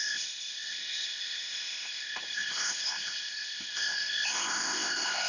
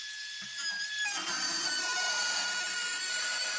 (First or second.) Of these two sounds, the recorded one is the second